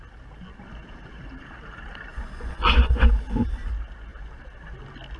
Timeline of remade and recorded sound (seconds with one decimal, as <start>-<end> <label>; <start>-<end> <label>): 0.0-2.1 recorded; 2.1-3.1 remade; 3.1-5.2 recorded